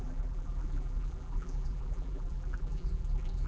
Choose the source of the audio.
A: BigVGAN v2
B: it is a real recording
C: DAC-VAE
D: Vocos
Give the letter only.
A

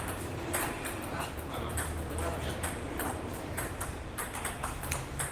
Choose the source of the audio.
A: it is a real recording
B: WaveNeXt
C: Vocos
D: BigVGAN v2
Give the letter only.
D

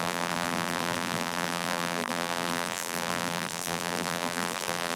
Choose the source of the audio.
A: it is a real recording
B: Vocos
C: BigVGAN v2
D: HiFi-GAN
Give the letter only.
C